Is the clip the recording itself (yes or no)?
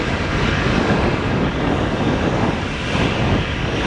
no